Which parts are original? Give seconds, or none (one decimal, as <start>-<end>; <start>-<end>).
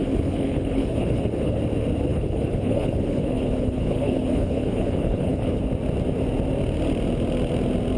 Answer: 1.6-2.1; 5.6-8.0